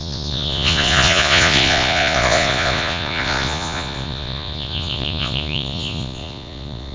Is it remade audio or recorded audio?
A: remade